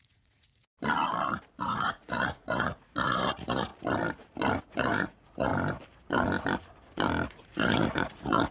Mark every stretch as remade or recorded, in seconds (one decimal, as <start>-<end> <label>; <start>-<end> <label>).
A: 0.0-0.7 remade; 0.7-1.6 recorded; 1.6-3.7 remade; 3.7-4.6 recorded; 4.6-5.5 remade; 5.5-7.3 recorded; 7.3-8.5 remade